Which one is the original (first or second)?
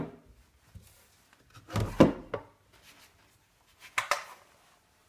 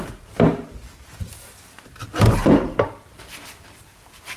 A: first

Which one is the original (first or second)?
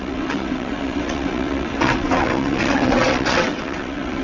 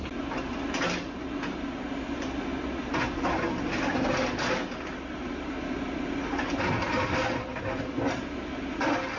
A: second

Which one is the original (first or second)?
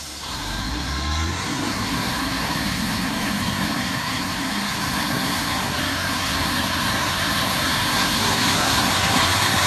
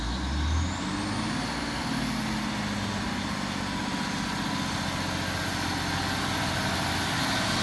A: second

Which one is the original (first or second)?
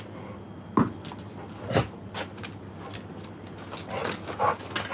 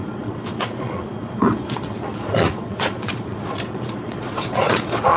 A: first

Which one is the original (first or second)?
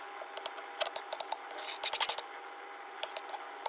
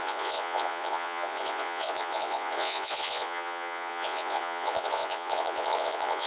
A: first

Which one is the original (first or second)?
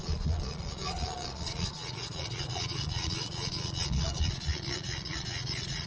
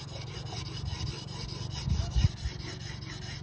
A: second